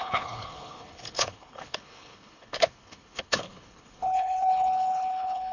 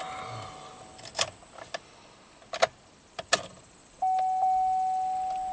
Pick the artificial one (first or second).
first